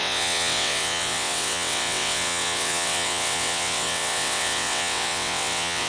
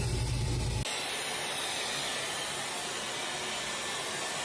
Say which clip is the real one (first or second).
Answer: second